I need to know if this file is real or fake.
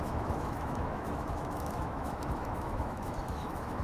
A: fake